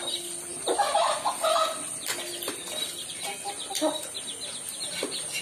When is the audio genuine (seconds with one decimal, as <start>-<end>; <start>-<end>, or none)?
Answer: 0.0-0.5; 1.0-5.4